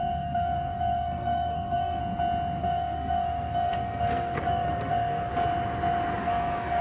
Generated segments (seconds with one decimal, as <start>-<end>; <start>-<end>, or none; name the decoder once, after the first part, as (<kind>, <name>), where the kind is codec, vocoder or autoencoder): 0.0-2.0 (codec, SNAC); 2.6-5.3; 6.2-6.8